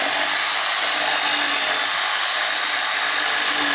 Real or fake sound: real